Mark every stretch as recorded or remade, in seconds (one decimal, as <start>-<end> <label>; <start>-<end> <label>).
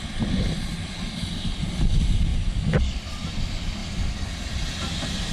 0.0-5.3 recorded